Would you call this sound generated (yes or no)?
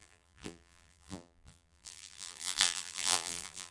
yes